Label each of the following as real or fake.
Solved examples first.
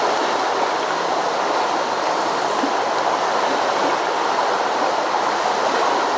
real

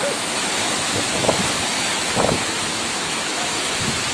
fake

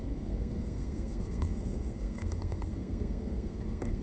fake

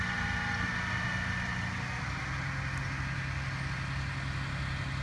real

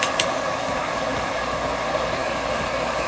fake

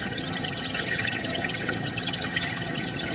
fake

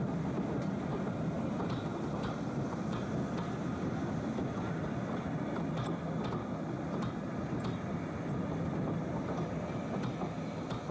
real